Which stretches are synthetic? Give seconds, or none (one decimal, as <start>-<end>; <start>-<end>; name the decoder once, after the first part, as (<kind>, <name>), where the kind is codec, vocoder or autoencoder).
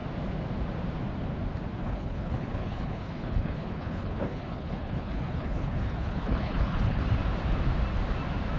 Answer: 1.8-7.0 (codec, HILCodec)